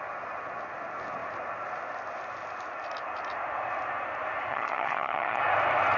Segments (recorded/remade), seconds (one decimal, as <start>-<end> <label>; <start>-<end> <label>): 0.0-4.5 recorded; 4.5-5.4 remade; 5.4-6.0 recorded